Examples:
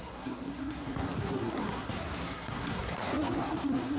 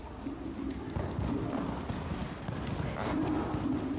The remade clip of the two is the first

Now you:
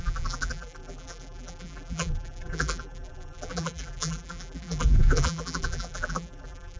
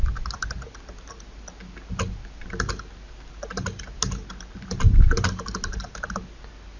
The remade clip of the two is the first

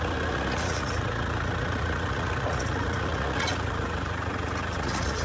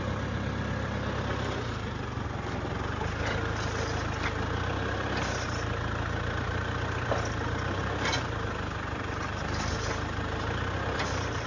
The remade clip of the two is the first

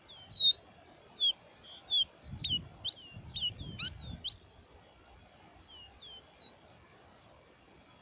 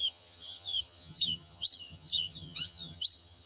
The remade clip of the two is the second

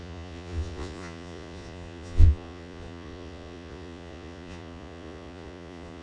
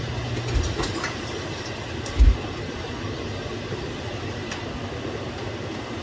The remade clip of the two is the first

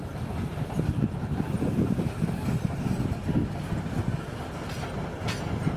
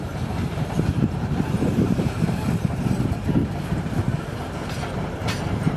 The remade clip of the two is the second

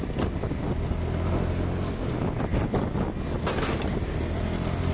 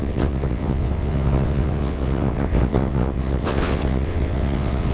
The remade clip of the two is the second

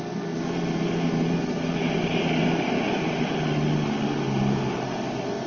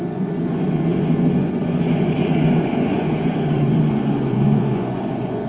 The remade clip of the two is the second